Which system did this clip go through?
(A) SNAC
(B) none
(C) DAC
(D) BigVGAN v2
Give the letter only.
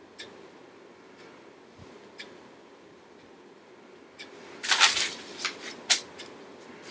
B